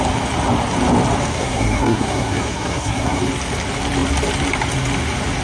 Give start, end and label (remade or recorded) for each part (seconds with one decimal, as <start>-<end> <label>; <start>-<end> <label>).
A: 0.0-1.3 recorded; 1.3-3.2 remade; 3.2-5.4 recorded